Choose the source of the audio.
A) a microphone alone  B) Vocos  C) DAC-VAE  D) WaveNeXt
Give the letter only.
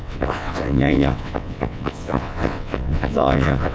D